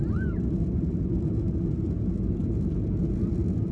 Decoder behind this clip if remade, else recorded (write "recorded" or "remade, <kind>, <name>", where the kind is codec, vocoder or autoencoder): recorded